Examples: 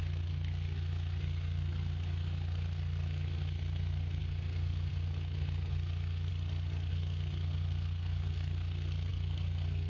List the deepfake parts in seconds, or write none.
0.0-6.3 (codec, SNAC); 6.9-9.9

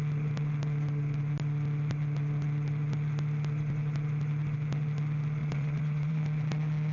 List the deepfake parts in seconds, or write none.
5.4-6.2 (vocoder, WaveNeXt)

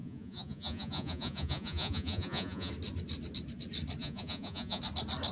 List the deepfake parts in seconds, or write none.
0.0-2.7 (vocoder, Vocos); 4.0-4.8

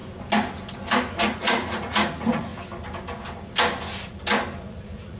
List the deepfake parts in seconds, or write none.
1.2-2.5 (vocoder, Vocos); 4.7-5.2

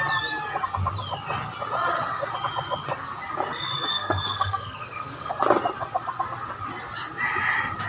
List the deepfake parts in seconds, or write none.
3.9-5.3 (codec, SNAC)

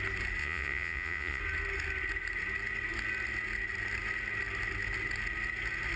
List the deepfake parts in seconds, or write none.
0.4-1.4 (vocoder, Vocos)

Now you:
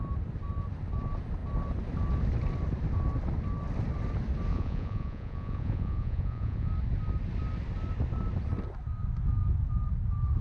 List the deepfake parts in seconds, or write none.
4.5-6.7 (vocoder, Vocos)

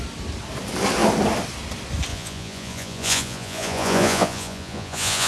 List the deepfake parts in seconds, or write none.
2.1-5.3 (vocoder, Vocos)